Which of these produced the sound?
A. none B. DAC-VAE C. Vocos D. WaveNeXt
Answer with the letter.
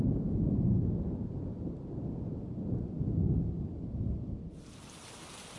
A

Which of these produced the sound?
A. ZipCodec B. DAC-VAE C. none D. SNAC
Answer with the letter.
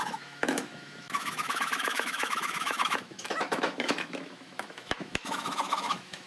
B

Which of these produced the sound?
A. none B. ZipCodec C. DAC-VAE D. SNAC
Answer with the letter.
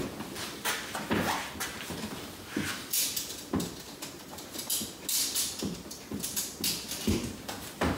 A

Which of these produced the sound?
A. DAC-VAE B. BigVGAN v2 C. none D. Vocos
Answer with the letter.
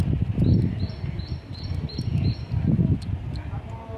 C